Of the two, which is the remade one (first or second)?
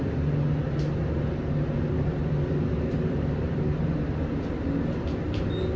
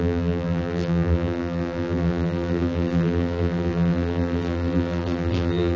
second